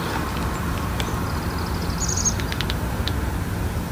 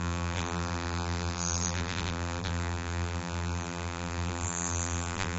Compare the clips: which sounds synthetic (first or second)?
second